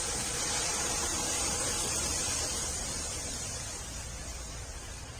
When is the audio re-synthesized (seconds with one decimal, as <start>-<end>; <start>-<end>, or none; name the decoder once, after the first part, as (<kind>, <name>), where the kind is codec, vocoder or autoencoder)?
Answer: 0.7-3.8 (vocoder, BigVGAN v2)